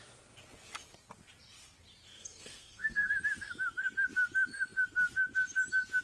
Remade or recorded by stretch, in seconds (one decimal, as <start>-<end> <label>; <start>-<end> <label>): 0.0-2.2 recorded; 2.2-3.1 remade; 3.1-6.0 recorded